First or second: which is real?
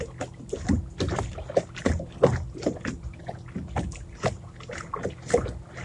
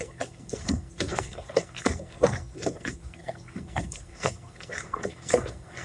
first